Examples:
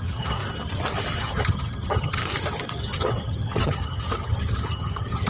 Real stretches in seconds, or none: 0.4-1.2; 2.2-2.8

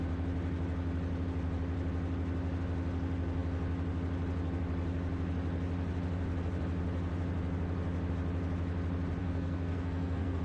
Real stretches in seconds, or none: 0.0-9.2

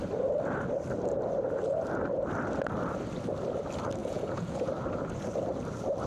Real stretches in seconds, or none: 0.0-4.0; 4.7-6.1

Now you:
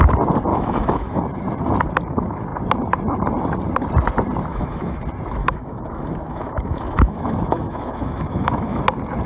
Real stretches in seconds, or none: 0.0-0.5; 1.2-4.5; 5.0-5.4; 8.8-9.3

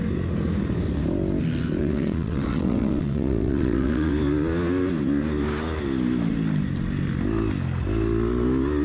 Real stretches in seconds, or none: 0.0-1.8; 4.1-8.8

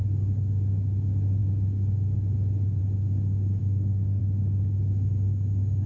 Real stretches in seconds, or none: 0.0-3.6; 4.2-5.9